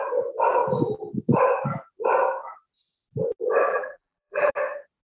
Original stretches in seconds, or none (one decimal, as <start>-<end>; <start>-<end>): 0.0-3.7; 4.5-5.1